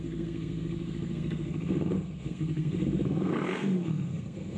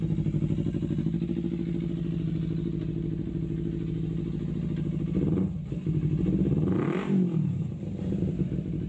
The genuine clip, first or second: second